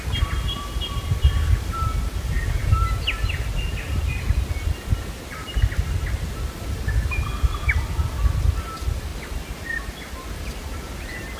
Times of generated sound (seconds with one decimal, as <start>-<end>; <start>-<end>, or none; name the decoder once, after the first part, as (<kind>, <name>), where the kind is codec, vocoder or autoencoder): none